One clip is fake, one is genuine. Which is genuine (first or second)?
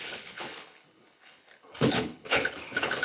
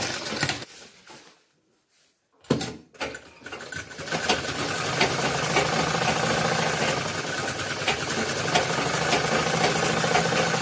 second